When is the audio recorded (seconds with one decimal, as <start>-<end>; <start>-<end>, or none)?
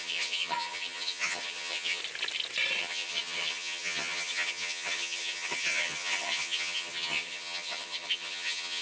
2.0-2.8